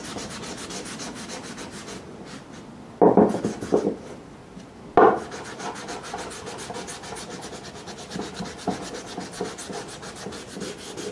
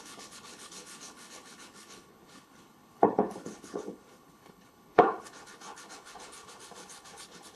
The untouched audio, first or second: first